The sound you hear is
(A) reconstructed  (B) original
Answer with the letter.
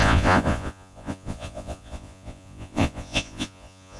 A